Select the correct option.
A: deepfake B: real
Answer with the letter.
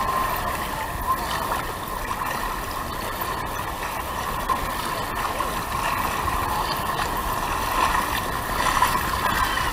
B